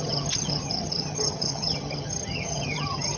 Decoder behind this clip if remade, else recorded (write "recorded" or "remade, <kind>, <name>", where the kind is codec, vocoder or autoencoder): remade, vocoder, HiFi-GAN